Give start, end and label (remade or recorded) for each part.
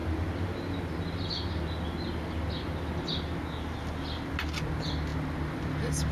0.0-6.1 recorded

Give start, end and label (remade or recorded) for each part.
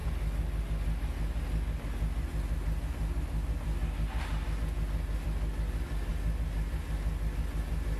0.0-8.0 recorded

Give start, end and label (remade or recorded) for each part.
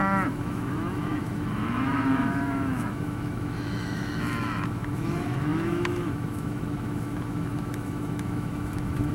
0.0-9.1 remade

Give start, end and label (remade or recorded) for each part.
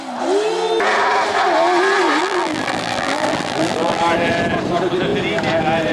0.0-2.2 recorded; 2.2-4.0 remade; 4.0-5.9 recorded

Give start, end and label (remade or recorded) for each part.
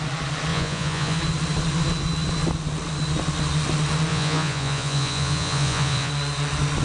0.0-0.5 recorded; 0.5-1.2 remade; 1.2-4.1 recorded; 4.1-6.1 remade; 6.1-6.8 recorded